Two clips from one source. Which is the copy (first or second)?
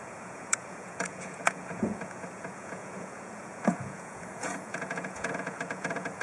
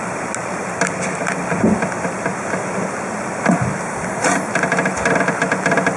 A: first